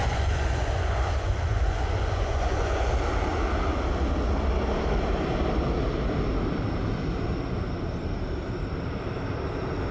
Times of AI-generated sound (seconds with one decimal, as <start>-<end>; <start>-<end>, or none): 0.0-2.9